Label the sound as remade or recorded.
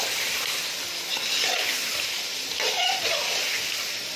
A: recorded